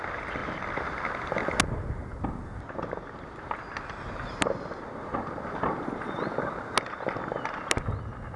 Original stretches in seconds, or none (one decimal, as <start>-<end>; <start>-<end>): 0.0-8.4

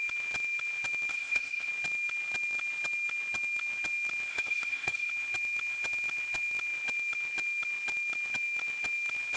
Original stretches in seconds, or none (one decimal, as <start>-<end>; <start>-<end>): 0.0-1.1; 1.7-4.3; 5.1-9.4

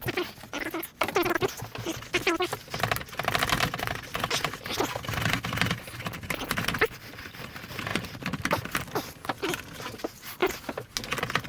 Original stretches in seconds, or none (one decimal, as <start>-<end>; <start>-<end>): 0.0-11.5

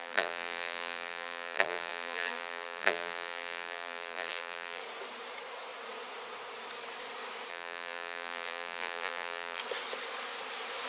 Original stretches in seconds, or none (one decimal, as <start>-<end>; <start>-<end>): 4.8-7.5; 9.6-10.9

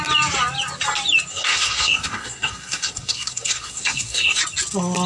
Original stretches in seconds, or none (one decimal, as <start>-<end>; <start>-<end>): 0.0-1.3; 4.4-5.1